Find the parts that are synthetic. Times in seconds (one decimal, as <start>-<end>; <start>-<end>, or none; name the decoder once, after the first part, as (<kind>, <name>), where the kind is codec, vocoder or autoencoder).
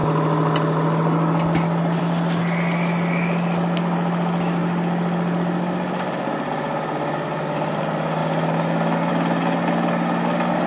none